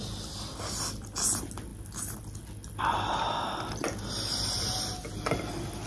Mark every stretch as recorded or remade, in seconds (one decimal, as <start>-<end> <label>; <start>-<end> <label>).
0.0-5.9 recorded